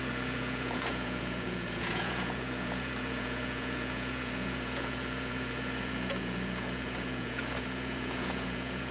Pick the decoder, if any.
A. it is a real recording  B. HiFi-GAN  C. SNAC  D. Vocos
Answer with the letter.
D